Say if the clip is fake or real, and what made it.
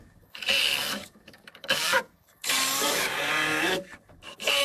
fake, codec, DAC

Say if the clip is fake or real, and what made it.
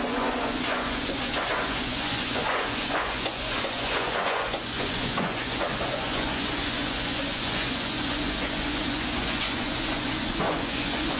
fake, vocoder, Vocos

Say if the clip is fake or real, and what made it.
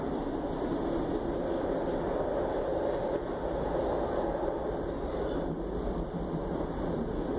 real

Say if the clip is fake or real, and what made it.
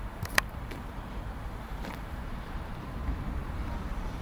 fake, vocoder, BigVGAN v2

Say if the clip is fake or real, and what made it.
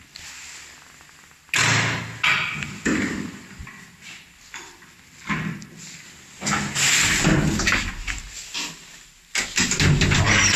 real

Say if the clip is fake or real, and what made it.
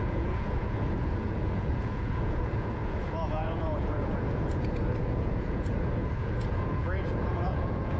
fake, vocoder, Vocos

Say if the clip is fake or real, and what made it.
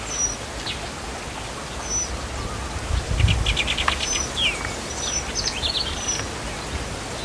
real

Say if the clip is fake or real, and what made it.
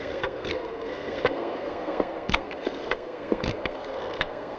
fake, codec, SNAC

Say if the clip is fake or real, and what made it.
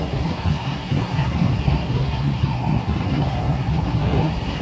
fake, codec, SNAC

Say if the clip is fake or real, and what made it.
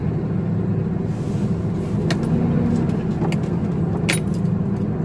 real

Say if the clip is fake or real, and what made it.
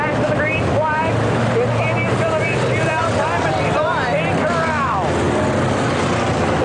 real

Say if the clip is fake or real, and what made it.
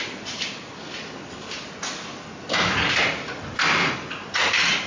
real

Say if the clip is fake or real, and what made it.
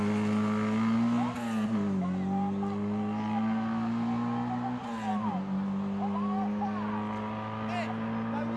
real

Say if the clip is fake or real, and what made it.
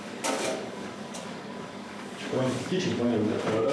fake, codec, DAC